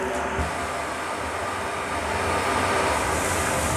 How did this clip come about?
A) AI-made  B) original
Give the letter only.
B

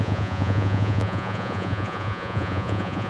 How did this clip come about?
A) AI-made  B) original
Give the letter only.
A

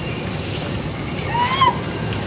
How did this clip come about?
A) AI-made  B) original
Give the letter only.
B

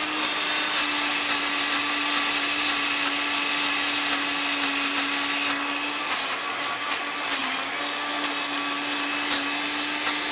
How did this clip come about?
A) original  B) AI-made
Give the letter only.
A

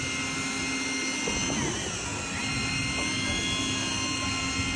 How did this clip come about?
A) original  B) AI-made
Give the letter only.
A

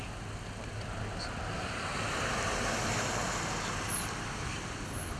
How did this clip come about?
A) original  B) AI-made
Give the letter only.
A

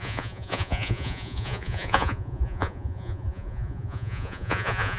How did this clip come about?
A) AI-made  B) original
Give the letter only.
A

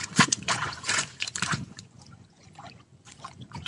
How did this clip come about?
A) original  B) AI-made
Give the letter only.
B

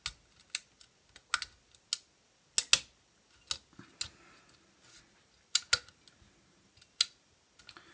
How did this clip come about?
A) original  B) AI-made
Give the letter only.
A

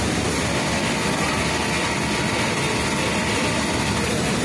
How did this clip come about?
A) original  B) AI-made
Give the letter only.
A